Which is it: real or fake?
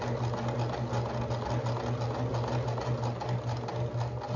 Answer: real